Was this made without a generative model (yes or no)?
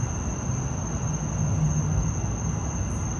yes